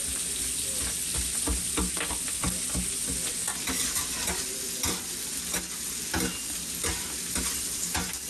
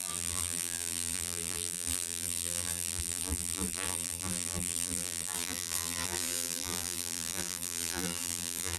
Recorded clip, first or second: first